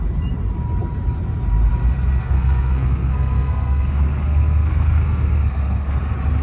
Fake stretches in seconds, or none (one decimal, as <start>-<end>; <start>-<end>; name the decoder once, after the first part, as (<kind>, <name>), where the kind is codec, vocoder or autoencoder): 2.2-6.0 (codec, SNAC)